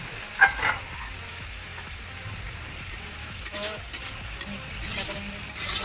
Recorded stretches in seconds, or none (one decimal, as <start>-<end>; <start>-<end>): 0.0-1.3; 2.0-3.2; 3.9-5.8